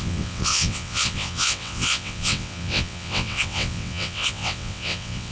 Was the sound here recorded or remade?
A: remade